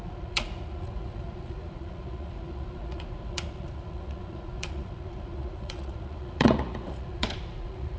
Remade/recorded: remade